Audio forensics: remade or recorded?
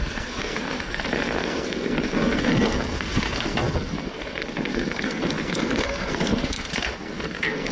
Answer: remade